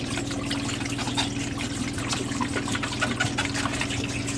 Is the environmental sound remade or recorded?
recorded